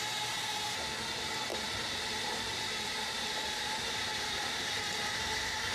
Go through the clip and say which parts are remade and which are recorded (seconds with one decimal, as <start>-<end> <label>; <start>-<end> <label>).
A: 0.0-1.5 recorded; 1.5-4.9 remade; 4.9-5.7 recorded